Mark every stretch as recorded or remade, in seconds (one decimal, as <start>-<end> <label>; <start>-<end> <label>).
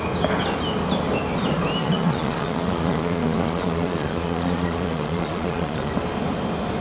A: 0.0-1.8 recorded; 1.8-5.9 remade; 5.9-6.8 recorded